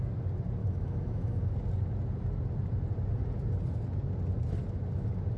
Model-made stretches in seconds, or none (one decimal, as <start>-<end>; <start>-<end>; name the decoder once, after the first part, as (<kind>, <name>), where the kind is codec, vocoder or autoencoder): 0.6-1.5 (autoencoder, DAC-VAE)